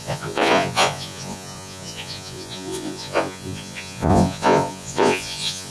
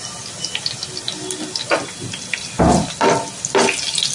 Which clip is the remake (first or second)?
first